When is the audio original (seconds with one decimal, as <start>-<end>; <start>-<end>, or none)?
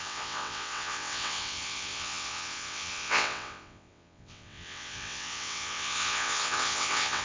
none